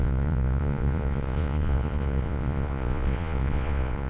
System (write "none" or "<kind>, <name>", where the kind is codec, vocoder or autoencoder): vocoder, Vocos